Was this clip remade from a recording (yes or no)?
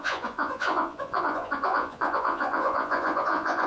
yes